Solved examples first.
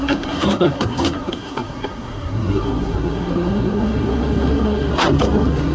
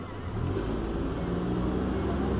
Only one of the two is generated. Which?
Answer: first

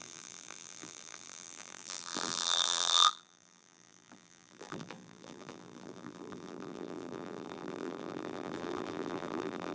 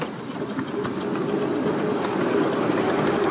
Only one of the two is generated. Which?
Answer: first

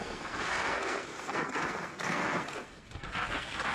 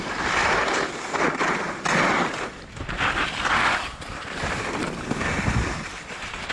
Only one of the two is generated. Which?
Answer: first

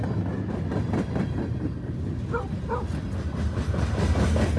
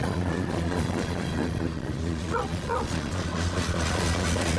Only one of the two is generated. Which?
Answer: second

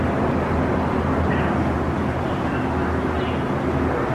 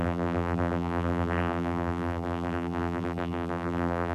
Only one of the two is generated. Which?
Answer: second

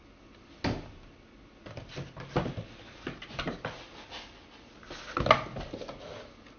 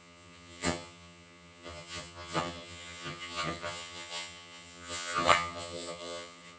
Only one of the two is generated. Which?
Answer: second